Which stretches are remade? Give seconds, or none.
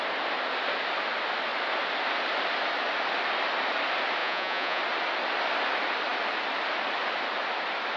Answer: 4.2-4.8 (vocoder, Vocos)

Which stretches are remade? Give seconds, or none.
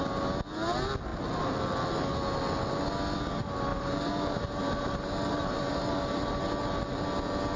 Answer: 3.7-6.4 (vocoder, BigVGAN v2)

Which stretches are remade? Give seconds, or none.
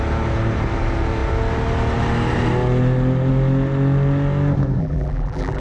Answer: 4.8-5.6 (vocoder, BigVGAN v2)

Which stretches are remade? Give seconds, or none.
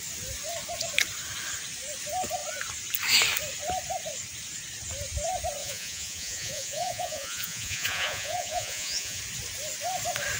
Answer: 5.6-9.2 (vocoder, Vocos)